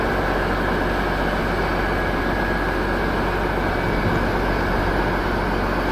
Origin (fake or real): real